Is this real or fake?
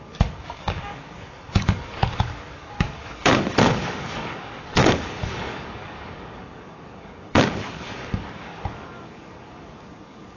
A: fake